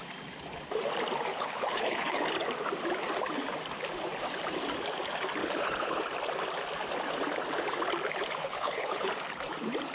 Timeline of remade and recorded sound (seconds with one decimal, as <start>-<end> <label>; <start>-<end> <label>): 0.0-1.3 recorded; 1.3-2.2 remade; 2.2-5.4 recorded; 5.4-6.0 remade; 6.0-8.4 recorded; 8.4-9.1 remade; 9.1-9.9 recorded